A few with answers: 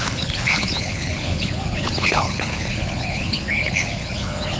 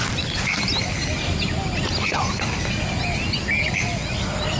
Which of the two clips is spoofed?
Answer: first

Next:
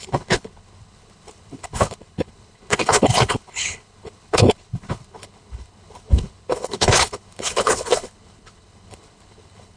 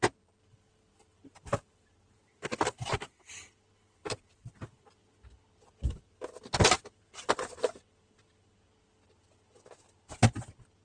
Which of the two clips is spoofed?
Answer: first